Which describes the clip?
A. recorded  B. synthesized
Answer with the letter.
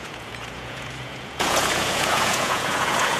B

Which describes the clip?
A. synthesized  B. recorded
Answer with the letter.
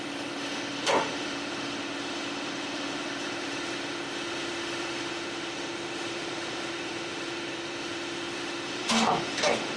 A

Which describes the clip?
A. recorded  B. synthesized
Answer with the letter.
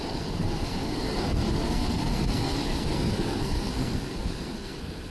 B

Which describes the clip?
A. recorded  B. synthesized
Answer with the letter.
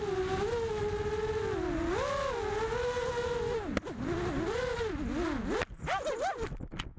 A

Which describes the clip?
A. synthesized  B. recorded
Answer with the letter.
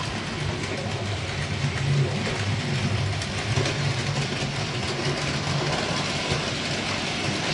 B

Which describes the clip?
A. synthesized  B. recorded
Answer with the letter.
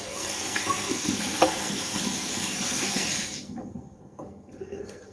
A